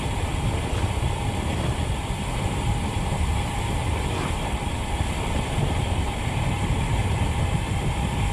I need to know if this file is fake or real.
real